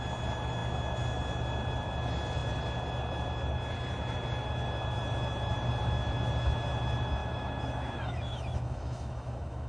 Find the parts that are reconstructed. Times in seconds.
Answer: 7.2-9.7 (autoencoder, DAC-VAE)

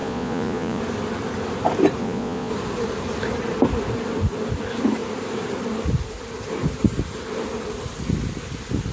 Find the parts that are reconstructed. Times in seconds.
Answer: 0.0-0.8 (vocoder, Vocos); 2.0-2.5

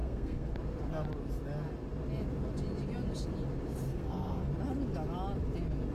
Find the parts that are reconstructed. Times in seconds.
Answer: 0.0-0.5 (codec, SNAC); 3.9-4.5

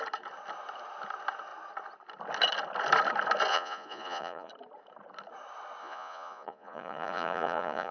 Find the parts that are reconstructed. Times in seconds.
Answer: 3.5-4.5 (vocoder, Vocos); 5.8-7.9

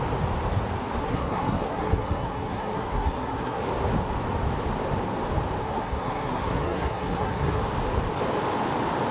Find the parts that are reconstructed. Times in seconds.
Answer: 1.0-3.6 (codec, SNAC); 5.6-7.6